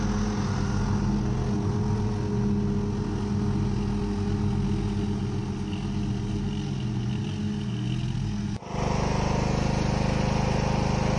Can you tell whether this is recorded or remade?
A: recorded